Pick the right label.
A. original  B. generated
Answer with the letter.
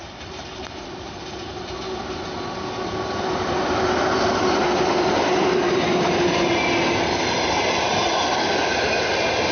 A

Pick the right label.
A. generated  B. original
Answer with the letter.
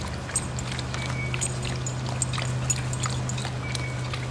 B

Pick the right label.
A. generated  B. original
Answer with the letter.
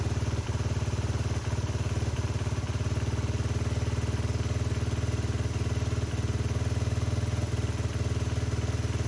B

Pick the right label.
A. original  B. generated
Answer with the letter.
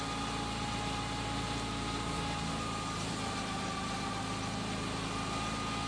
A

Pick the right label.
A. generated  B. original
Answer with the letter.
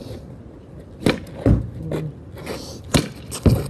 B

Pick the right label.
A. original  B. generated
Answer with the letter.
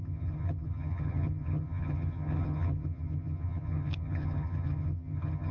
B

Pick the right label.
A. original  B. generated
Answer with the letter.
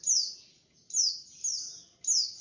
A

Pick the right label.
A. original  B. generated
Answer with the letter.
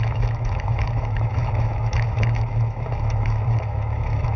B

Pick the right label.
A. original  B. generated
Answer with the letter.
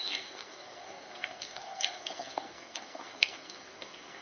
B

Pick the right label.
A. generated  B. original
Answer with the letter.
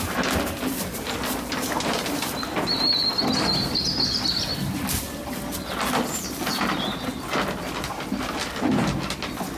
B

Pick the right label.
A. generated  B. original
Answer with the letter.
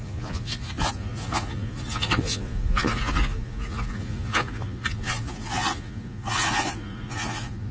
A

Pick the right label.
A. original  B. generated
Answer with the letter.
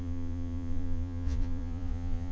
B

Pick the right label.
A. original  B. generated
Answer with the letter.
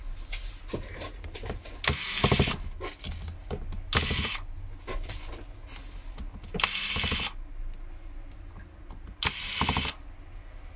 A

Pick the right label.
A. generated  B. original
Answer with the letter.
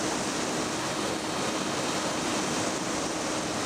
B